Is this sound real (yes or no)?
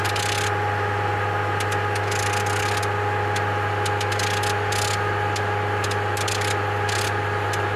yes